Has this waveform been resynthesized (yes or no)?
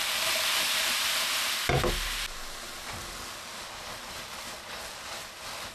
no